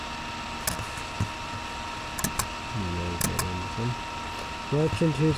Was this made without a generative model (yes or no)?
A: yes